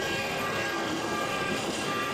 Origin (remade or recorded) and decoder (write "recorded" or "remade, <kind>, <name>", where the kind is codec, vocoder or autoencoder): remade, codec, SNAC